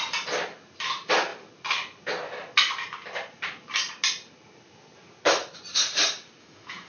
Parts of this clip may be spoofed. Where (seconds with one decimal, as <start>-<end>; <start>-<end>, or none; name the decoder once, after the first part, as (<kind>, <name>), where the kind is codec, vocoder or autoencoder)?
6.4-6.9 (autoencoder, DAC-VAE)

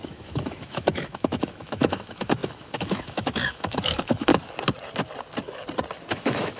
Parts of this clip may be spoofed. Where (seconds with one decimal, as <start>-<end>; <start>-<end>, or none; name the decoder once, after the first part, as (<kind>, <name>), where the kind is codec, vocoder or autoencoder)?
0.0-4.3 (autoencoder, DAC-VAE); 6.1-6.6

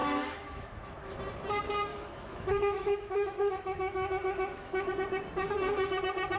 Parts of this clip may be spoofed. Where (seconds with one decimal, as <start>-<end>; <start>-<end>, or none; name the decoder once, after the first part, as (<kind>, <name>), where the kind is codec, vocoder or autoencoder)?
0.0-1.2 (autoencoder, DAC-VAE); 1.9-4.9

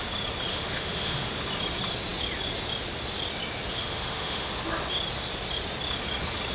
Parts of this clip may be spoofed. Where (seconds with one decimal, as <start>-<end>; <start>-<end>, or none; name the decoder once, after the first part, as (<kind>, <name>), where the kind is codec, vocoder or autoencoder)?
0.5-1.3 (autoencoder, DAC-VAE); 3.7-4.5

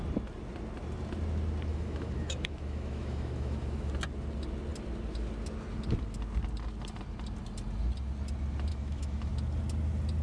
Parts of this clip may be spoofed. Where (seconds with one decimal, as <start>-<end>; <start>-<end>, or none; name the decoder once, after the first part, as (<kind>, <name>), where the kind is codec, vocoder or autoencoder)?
1.7-3.9 (autoencoder, DAC-VAE); 8.7-9.3

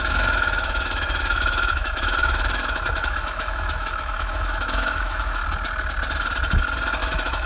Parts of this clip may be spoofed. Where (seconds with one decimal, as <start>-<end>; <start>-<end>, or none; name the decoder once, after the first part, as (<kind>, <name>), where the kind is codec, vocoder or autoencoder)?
0.0-5.4 (autoencoder, DAC-VAE); 7.0-7.5